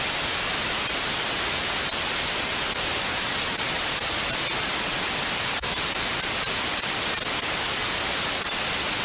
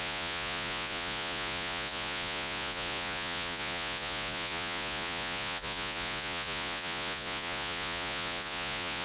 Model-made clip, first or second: second